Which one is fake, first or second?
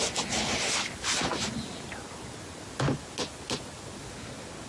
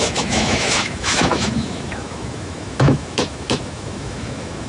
second